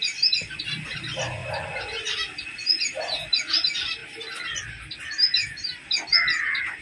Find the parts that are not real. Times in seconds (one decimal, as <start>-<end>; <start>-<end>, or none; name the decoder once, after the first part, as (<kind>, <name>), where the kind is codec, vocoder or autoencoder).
0.0-1.4 (vocoder, BigVGAN v2); 2.8-4.0

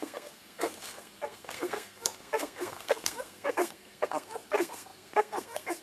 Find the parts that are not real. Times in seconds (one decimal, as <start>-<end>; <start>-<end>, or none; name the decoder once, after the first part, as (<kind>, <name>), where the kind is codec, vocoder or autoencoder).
0.0-5.8 (codec, SNAC)

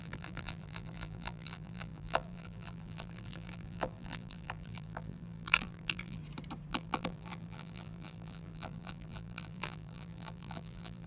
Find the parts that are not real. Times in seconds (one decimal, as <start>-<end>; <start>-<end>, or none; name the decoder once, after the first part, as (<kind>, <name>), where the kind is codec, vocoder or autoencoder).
0.0-6.2 (vocoder, BigVGAN v2); 6.7-11.1

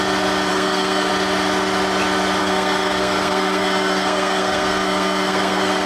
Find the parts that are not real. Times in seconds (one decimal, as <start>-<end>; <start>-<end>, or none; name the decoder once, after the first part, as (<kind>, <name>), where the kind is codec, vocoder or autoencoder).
0.5-1.1 (codec, SNAC); 2.4-5.9

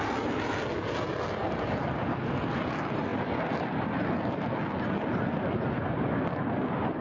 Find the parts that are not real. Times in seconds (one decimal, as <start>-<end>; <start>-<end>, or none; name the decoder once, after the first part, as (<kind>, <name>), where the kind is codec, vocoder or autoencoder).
none

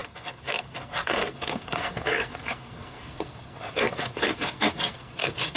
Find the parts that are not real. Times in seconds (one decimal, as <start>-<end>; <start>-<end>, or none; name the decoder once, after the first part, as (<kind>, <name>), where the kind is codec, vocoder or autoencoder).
0.0-5.6 (codec, SNAC)